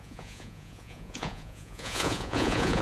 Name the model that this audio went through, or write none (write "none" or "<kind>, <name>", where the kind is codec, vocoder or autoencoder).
vocoder, Vocos